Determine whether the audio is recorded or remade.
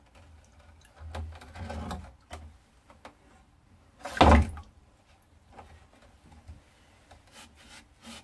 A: recorded